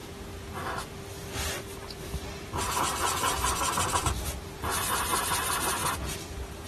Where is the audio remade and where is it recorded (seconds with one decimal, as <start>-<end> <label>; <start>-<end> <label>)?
0.0-4.0 recorded; 4.0-4.7 remade; 4.7-5.2 recorded; 5.2-5.8 remade; 5.8-6.3 recorded; 6.3-6.7 remade